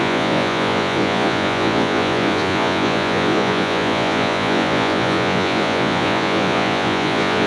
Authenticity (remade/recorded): remade